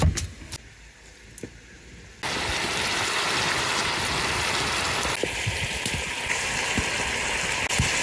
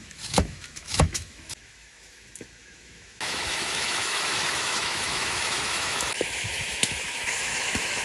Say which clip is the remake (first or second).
second